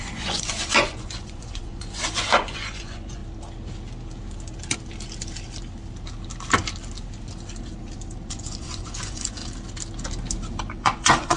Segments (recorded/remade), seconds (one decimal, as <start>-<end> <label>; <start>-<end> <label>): 0.0-3.2 remade; 3.2-8.3 recorded; 8.3-9.4 remade; 9.4-10.7 recorded; 10.7-11.4 remade